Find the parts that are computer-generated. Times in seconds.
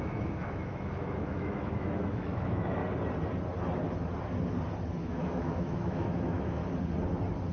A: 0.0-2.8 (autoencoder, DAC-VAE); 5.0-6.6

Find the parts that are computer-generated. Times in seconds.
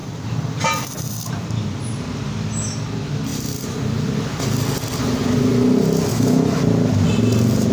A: 6.1-6.6 (autoencoder, DAC-VAE)